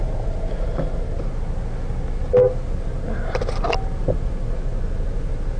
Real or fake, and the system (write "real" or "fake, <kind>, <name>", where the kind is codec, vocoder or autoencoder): real